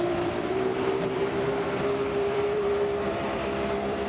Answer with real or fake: fake